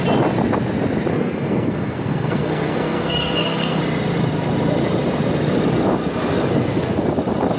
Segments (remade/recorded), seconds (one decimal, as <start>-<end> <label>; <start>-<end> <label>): 0.0-1.1 recorded; 1.1-3.8 remade; 3.8-7.6 recorded